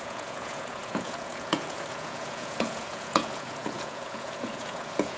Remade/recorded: remade